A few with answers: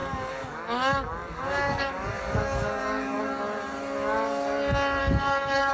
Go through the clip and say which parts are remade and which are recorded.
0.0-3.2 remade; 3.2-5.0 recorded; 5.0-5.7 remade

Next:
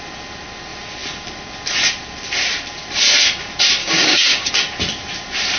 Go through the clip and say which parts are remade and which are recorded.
0.0-3.8 recorded; 3.8-4.5 remade; 4.5-5.6 recorded

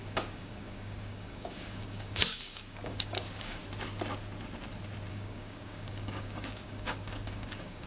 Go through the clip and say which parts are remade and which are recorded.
0.0-3.6 remade; 3.6-5.1 recorded; 5.1-7.9 remade

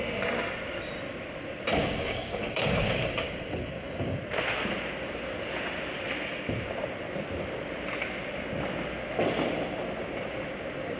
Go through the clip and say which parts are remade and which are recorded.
0.0-1.8 recorded; 1.8-4.2 remade; 4.2-11.0 recorded

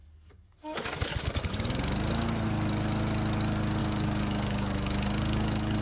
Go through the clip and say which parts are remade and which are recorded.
0.0-1.5 remade; 1.5-3.8 recorded; 3.8-5.8 remade